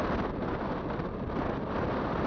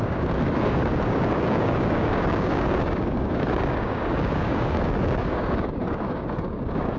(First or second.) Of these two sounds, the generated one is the second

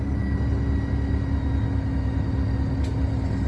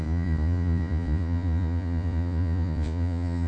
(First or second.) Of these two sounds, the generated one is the second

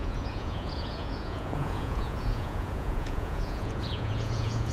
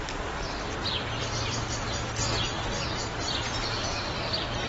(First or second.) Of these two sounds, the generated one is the first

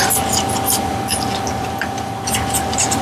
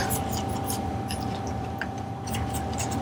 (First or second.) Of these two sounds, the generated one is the second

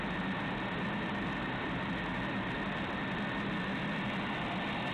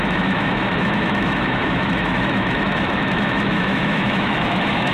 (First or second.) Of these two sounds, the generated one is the second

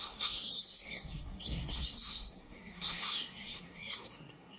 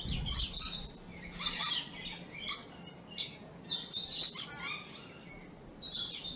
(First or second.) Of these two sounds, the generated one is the first